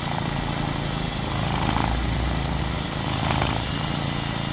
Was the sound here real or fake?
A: real